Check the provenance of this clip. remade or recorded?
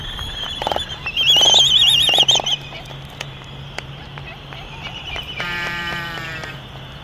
remade